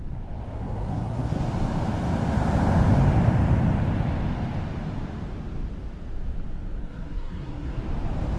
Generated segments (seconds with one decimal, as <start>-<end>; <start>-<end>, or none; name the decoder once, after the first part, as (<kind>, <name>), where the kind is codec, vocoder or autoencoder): 0.5-1.4 (codec, SNAC); 6.8-7.8